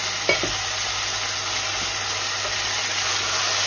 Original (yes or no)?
yes